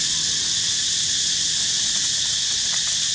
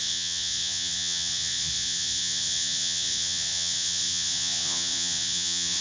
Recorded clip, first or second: first